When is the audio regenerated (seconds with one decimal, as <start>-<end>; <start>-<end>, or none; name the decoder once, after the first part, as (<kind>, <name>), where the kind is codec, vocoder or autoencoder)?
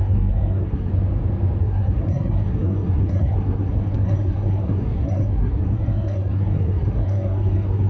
0.0-0.9 (codec, SNAC); 1.6-7.9